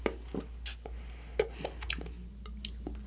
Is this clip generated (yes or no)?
no